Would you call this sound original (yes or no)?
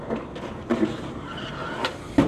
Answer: yes